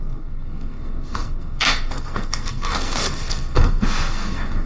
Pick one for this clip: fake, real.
fake